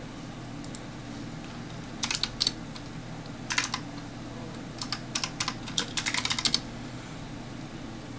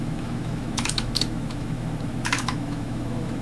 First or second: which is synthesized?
second